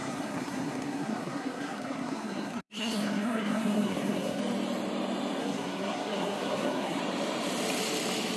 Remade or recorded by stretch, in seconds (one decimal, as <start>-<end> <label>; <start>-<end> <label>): 0.0-4.4 remade; 4.4-5.4 recorded; 5.4-7.0 remade; 7.0-8.4 recorded